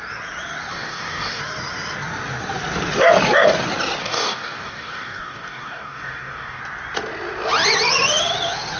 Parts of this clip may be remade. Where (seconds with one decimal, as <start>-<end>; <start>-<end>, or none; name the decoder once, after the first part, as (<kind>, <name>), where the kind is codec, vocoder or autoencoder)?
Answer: 0.7-1.4 (codec, DAC); 4.0-6.6